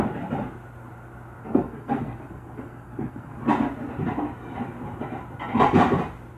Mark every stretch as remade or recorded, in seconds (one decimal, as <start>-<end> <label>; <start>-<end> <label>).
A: 0.0-1.4 recorded; 1.4-3.4 remade; 3.4-6.4 recorded